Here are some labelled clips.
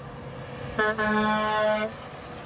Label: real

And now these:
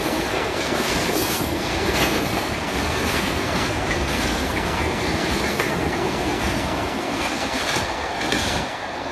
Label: fake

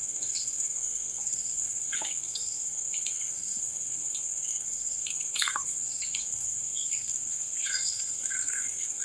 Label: fake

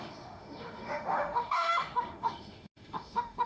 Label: fake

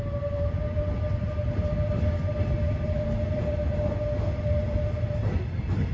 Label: real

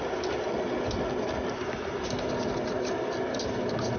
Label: real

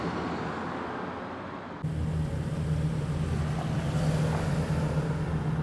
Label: real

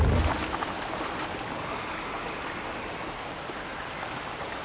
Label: real